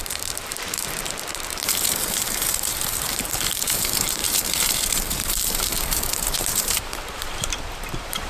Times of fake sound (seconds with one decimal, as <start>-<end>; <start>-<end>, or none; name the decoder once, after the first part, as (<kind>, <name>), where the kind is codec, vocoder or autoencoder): 0.0-8.3 (vocoder, BigVGAN v2)